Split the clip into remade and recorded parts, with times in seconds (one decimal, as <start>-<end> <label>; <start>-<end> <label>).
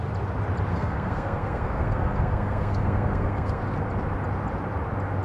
0.0-0.7 recorded; 0.7-3.6 remade; 3.6-5.2 recorded